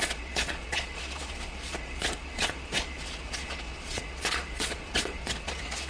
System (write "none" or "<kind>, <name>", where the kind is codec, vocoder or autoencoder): vocoder, Vocos